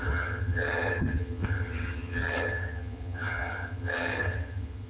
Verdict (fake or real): fake